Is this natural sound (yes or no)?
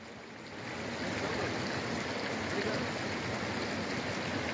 yes